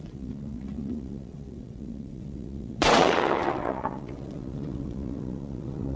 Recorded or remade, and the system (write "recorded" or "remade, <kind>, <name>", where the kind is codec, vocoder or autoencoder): remade, vocoder, WaveNeXt